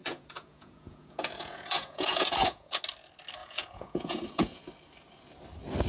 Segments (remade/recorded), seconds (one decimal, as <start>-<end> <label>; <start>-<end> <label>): 0.0-2.8 remade; 2.8-3.4 recorded; 3.4-4.6 remade; 4.6-5.9 recorded